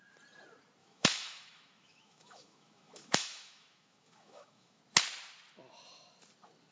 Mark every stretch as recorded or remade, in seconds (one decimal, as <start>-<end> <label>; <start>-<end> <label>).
0.0-0.8 recorded; 0.8-4.8 remade; 4.8-6.7 recorded